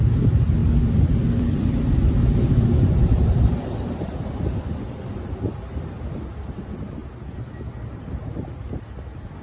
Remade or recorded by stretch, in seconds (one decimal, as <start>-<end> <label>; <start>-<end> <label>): 0.0-0.6 recorded; 0.6-5.6 remade; 5.6-9.4 recorded